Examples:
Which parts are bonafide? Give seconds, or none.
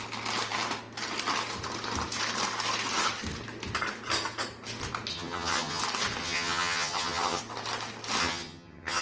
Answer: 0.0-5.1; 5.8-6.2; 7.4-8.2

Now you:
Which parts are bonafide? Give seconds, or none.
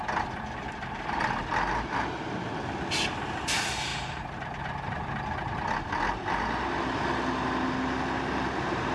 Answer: 0.0-8.9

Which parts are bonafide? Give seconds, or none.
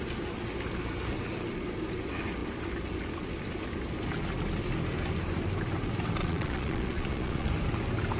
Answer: 0.0-6.2; 7.5-8.2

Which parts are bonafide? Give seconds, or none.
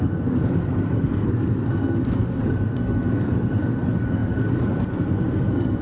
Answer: none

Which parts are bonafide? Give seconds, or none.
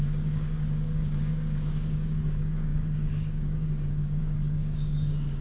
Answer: none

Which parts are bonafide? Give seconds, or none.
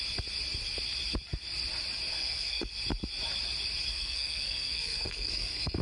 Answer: 0.0-2.1; 2.7-3.9